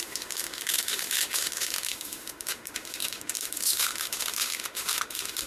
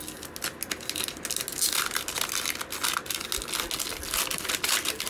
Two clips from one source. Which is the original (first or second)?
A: second